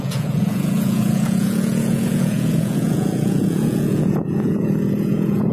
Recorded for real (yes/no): no